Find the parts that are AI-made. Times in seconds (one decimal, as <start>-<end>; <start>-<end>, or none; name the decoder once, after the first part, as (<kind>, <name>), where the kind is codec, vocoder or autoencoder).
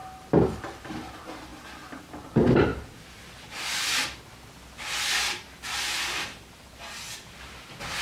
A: none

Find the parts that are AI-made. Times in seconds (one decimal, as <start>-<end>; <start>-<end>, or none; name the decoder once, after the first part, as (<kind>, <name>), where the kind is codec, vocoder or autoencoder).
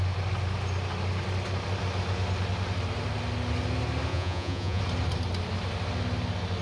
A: 4.1-4.8 (vocoder, Vocos)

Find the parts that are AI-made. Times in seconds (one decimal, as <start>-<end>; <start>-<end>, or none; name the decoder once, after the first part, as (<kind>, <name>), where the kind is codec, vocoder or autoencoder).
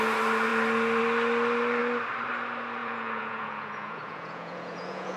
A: 2.8-5.2 (vocoder, Vocos)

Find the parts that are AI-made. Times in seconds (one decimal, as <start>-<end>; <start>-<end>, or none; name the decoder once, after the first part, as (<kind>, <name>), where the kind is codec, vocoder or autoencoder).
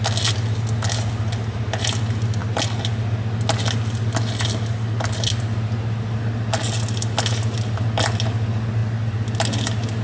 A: none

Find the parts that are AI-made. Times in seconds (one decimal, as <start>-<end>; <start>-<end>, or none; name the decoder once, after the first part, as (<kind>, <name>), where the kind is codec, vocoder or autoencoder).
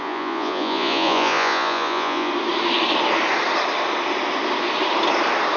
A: 0.0-2.3 (vocoder, Vocos)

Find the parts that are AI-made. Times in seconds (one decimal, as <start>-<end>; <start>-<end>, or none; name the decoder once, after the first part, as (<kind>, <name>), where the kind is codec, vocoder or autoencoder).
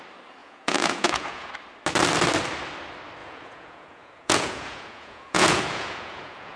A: 0.4-1.5 (vocoder, Vocos); 3.2-6.6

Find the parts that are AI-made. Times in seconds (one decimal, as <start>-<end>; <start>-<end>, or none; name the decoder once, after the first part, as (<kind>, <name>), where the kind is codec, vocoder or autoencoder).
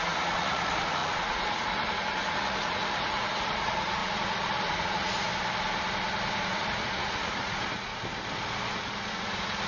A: 0.0-5.3 (vocoder, Vocos); 6.4-7.9; 9.1-9.7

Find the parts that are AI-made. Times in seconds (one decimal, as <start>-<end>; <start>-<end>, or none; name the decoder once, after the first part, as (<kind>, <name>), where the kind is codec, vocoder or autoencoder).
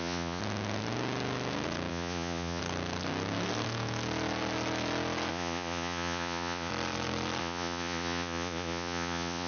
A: 0.0-0.4 (vocoder, Vocos); 1.9-2.6; 5.3-6.7; 7.4-9.5